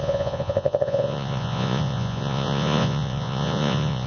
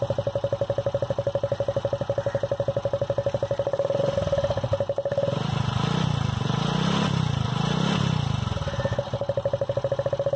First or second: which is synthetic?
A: first